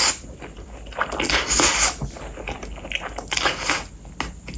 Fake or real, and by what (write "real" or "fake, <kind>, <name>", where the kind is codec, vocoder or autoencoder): real